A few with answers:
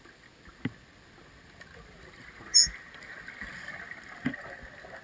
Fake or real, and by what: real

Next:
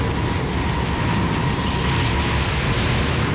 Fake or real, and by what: real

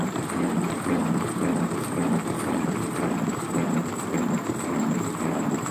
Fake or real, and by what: fake, vocoder, BigVGAN v2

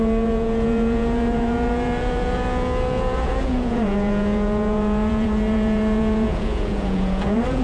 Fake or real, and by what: fake, vocoder, Vocos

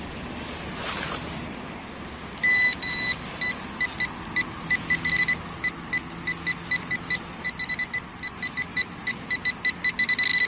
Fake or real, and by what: real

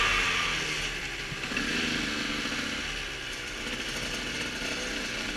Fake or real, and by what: real